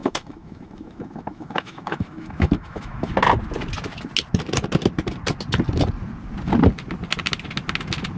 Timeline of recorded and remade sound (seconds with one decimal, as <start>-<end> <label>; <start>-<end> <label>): 0.0-3.1 remade; 3.1-8.2 recorded